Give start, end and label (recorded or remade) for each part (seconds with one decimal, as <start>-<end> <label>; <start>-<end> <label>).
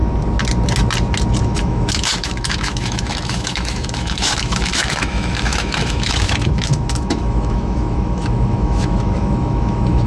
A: 0.0-1.4 recorded; 1.4-10.1 remade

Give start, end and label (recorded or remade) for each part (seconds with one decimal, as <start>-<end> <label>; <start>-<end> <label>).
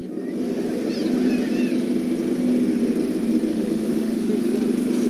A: 0.0-3.5 recorded; 3.5-4.3 remade; 4.3-5.1 recorded